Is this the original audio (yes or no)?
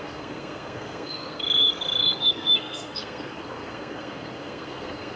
no